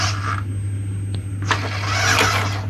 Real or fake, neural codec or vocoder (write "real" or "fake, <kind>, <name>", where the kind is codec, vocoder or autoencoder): real